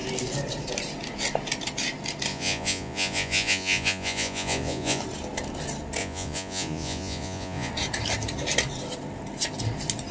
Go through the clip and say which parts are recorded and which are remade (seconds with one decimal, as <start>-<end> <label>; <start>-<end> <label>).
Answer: 0.0-2.3 recorded; 2.3-5.0 remade; 5.0-6.0 recorded; 6.0-7.7 remade; 7.7-10.1 recorded